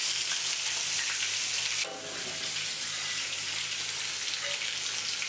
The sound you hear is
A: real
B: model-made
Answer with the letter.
A